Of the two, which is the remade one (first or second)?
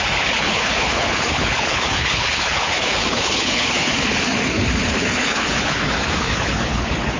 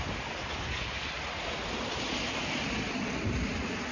first